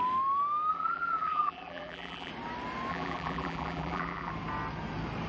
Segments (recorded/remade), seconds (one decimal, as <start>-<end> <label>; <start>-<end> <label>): 0.0-0.7 recorded; 0.7-2.3 remade; 2.3-2.9 recorded; 2.9-4.3 remade; 4.3-5.3 recorded